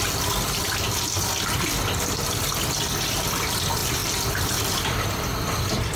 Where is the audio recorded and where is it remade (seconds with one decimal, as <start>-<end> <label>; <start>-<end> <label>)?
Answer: 0.0-6.0 recorded